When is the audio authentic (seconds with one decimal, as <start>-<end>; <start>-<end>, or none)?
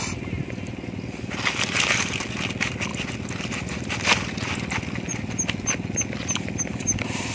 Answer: 0.0-7.3